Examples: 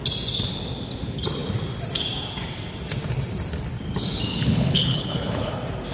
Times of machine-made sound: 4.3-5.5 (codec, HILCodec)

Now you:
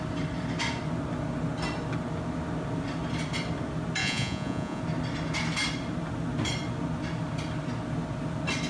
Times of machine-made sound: 4.0-4.8 (vocoder, Vocos)

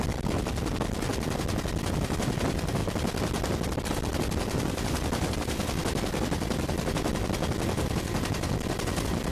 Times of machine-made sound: 0.0-1.1 (vocoder, BigVGAN v2); 1.9-2.8; 3.8-9.3

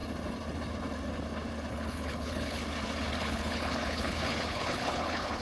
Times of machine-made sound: 1.7-2.6 (codec, HILCodec); 3.2-5.4

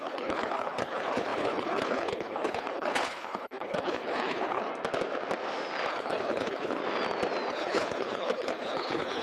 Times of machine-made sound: 0.0-4.7 (codec, HILCodec); 5.9-6.8; 7.5-9.2

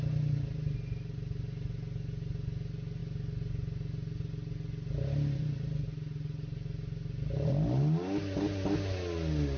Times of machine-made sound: none

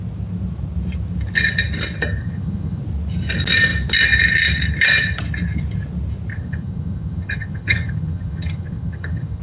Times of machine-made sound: 2.2-2.8 (vocoder, HiFi-GAN); 6.3-9.4

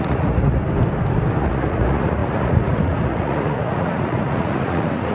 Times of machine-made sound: 0.0-0.6 (vocoder, Vocos); 1.4-5.1